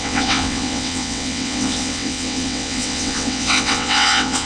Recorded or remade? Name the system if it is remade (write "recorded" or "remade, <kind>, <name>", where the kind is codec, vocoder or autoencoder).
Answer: remade, vocoder, WaveNeXt